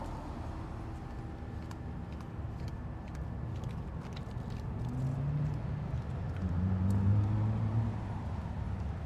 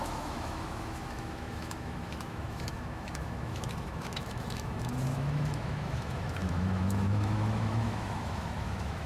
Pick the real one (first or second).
first